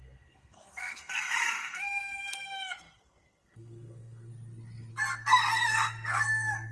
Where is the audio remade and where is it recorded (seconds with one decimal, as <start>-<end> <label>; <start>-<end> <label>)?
0.0-4.3 remade; 4.3-4.9 recorded; 4.9-6.7 remade